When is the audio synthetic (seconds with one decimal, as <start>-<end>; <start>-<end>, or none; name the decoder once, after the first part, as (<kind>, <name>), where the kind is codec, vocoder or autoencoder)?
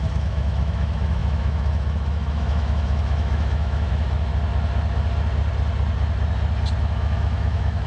0.0-4.3 (autoencoder, DAC-VAE); 6.8-7.9